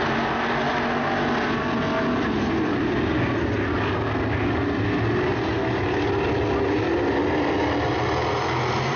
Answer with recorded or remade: recorded